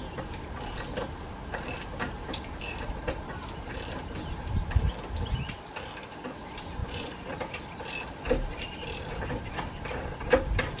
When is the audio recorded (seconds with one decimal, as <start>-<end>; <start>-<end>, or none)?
0.0-6.8; 7.3-10.8